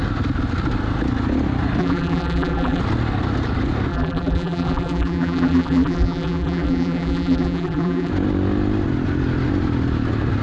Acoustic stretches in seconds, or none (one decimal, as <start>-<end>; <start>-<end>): 0.0-1.8; 2.8-3.9; 8.1-10.4